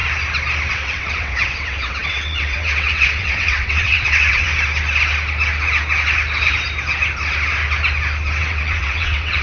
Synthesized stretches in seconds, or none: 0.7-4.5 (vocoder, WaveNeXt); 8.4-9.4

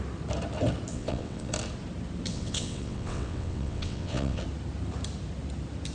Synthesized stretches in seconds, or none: 0.9-1.5 (vocoder, WaveNeXt); 2.3-4.4

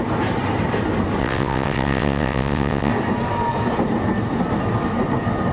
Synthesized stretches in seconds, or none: 1.2-2.9 (vocoder, WaveNeXt)

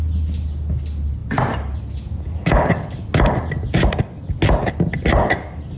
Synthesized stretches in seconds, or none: none

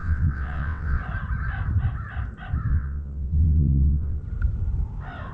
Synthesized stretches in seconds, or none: 0.0-1.0 (vocoder, WaveNeXt); 2.7-4.2

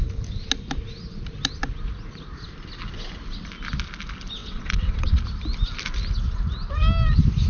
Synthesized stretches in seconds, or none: 4.4-5.2 (vocoder, WaveNeXt)